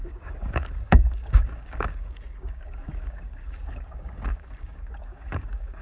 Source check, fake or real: fake